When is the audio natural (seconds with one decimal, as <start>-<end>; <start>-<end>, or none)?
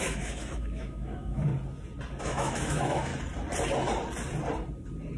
1.5-2.2; 3.1-5.2